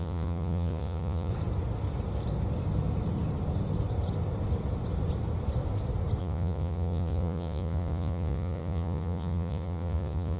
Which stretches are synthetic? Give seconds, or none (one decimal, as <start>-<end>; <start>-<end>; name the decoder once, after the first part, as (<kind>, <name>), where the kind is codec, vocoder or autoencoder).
0.0-1.3 (vocoder, Vocos); 6.2-10.4